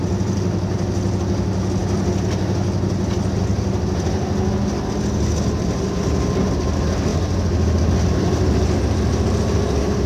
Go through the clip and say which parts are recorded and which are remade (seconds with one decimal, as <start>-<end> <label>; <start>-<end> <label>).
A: 0.0-10.1 recorded